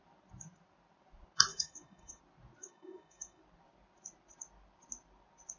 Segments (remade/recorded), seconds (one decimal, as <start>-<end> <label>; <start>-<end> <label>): 0.0-1.5 recorded; 1.5-2.2 remade; 2.2-2.6 recorded; 2.6-3.4 remade; 3.4-5.6 recorded